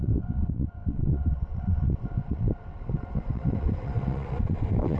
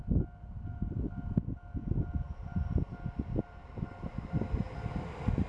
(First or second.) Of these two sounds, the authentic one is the second